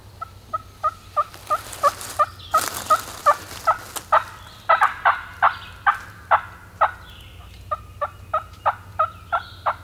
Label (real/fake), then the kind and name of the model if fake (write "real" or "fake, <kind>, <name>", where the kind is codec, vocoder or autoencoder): real